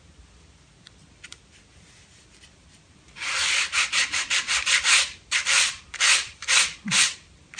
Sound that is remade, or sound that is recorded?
remade